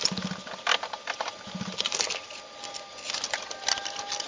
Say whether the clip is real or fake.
real